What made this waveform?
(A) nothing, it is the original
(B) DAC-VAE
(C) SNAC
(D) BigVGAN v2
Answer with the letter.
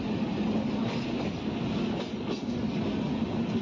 A